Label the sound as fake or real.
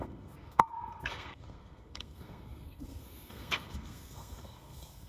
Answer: fake